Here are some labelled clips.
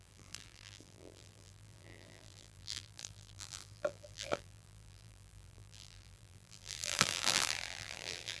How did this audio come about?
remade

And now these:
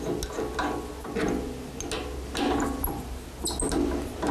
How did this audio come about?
recorded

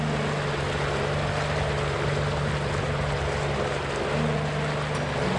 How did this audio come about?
recorded